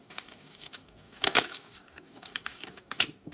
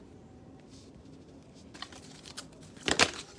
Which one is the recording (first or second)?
second